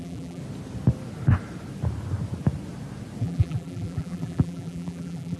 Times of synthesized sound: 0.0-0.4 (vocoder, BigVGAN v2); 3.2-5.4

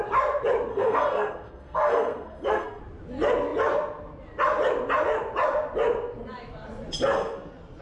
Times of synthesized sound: 0.7-2.8 (codec, SNAC)

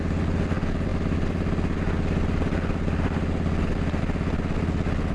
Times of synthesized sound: none

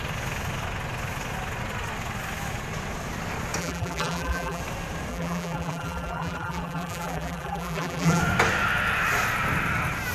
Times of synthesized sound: 3.6-4.6 (vocoder, BigVGAN v2); 5.1-8.2

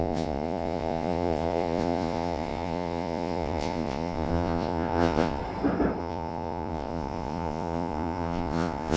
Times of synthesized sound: 0.0-5.4 (vocoder, Vocos); 6.0-9.0

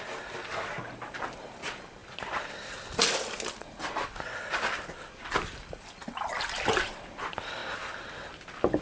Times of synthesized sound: 0.0-2.0 (vocoder, BigVGAN v2); 3.5-7.6